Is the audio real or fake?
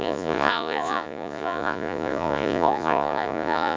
fake